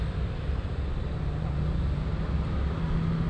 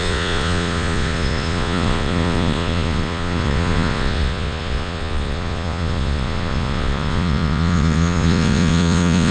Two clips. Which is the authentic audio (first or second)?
first